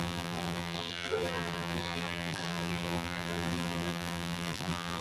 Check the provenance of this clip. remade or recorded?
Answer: remade